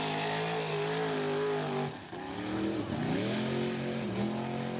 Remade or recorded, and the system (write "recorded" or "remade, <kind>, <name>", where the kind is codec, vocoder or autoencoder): recorded